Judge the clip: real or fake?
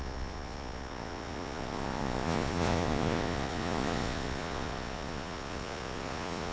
fake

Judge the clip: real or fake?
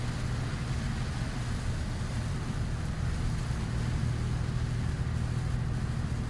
real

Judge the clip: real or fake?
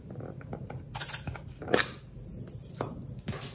real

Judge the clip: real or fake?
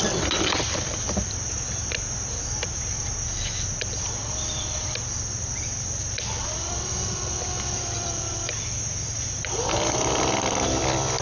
fake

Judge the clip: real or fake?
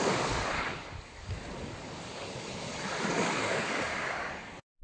fake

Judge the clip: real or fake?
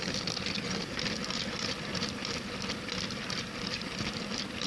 fake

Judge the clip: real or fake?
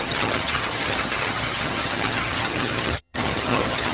fake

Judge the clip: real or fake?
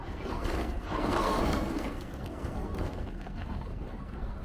fake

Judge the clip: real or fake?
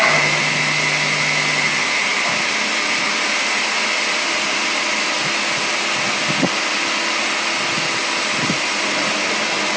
real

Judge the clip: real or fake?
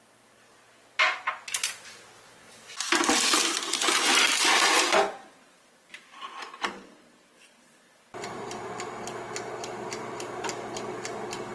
real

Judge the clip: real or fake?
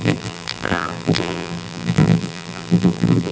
fake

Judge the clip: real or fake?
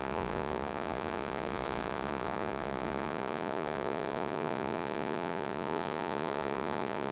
fake